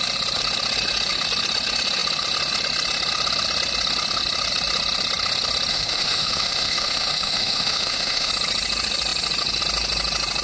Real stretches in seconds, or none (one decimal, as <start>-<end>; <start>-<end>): 0.0-5.7; 8.3-10.4